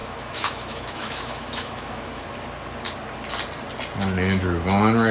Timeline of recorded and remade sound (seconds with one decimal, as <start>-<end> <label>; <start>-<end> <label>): 0.0-2.2 remade; 2.2-5.1 recorded